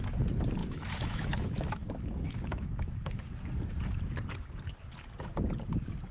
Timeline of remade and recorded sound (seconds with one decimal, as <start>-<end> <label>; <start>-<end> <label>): 0.0-0.6 recorded; 0.6-3.2 remade; 3.2-6.1 recorded